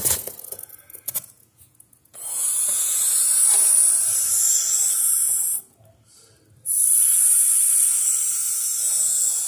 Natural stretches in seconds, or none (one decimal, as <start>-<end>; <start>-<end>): 3.4-8.3